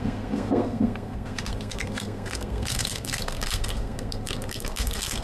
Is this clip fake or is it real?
fake